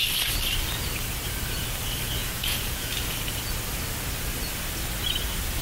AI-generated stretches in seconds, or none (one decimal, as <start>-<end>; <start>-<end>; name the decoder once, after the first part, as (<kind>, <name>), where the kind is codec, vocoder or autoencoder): 2.2-2.9 (vocoder, Vocos)